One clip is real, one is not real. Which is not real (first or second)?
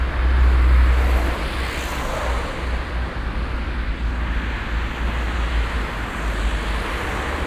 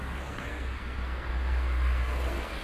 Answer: second